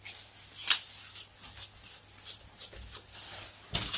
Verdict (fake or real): real